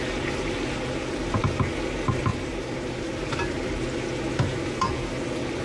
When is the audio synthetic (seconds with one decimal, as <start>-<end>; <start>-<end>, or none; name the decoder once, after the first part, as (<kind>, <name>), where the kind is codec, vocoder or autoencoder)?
2.3-3.2 (vocoder, BigVGAN v2)

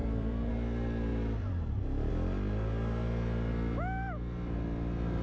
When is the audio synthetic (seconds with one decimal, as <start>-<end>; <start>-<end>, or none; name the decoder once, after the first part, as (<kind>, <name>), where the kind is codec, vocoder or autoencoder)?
0.0-0.5 (vocoder, BigVGAN v2)

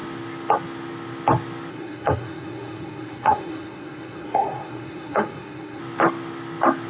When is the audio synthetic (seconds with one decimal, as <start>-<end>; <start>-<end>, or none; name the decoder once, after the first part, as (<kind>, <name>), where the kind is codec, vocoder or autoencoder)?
1.7-5.8 (codec, SNAC)

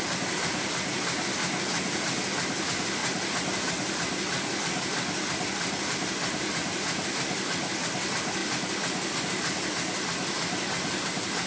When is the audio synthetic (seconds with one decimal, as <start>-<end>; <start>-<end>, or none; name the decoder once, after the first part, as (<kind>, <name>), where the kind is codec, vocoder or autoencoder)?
none